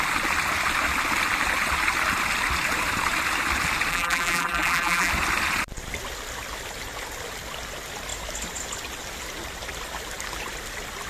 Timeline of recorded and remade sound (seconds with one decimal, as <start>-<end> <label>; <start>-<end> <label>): 0.0-3.9 recorded; 3.9-5.1 remade; 5.1-11.1 recorded